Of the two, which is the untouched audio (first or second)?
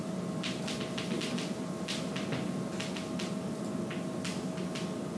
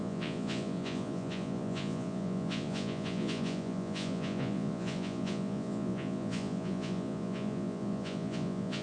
first